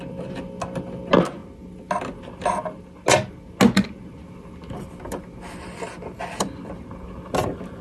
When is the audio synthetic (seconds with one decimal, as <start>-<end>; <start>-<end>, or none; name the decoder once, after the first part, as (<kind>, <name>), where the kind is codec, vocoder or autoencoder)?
none